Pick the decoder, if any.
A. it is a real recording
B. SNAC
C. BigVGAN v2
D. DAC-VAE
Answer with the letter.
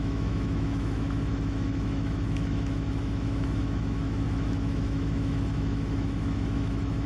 D